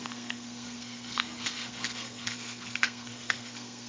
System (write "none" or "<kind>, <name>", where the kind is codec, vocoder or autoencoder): codec, SNAC